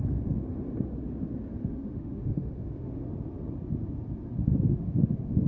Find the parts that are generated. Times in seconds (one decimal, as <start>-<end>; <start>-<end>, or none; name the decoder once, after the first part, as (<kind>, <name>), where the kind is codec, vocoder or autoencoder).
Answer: 1.6-3.0 (autoencoder, DAC-VAE); 4.4-5.5